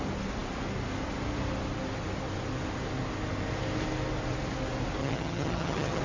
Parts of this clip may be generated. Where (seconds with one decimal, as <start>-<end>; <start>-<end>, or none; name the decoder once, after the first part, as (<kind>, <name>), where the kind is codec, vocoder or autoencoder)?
5.0-6.0 (vocoder, HiFi-GAN)